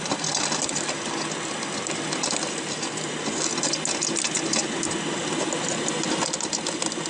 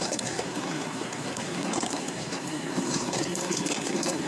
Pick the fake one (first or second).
second